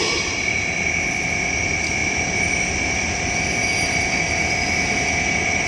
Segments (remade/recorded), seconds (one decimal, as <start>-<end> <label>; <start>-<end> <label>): 0.0-5.7 recorded